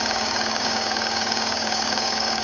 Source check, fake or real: fake